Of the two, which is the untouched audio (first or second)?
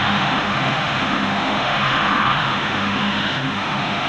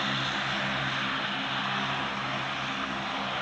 second